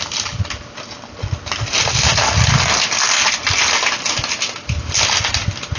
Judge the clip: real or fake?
real